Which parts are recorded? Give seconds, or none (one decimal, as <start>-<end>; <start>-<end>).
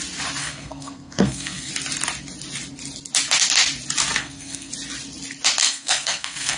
0.0-0.4; 1.7-4.2; 4.7-5.6